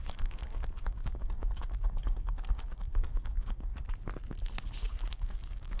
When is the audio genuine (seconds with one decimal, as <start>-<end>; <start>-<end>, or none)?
3.7-5.1